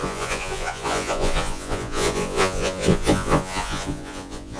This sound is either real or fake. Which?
fake